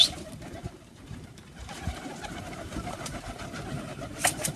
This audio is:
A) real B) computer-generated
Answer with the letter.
B